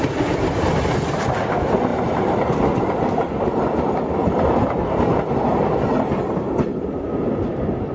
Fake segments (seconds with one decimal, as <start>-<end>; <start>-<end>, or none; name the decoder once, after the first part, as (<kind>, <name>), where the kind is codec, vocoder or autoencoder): none